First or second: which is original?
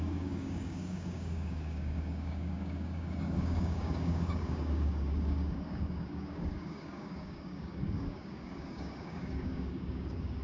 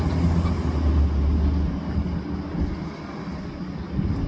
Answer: second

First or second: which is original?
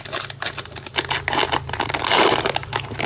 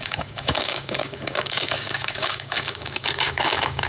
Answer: first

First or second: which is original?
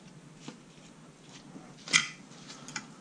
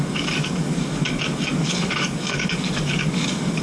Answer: first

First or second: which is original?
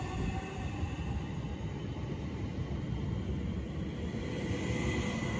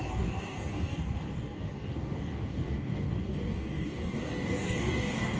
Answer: first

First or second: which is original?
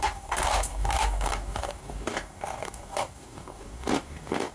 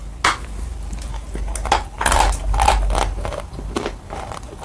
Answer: second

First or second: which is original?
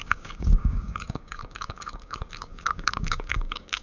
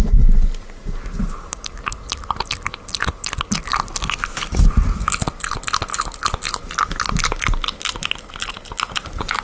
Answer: second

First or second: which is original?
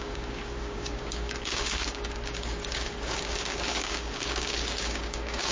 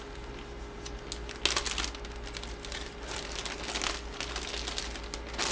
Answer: second